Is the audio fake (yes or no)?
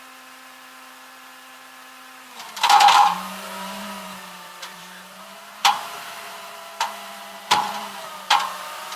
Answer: yes